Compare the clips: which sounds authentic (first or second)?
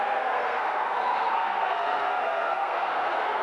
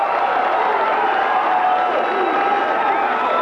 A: second